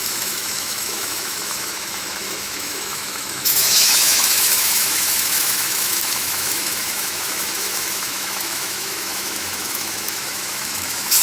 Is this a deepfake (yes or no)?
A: yes